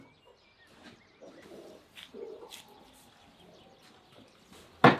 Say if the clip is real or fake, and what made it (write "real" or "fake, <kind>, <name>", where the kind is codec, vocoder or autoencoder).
real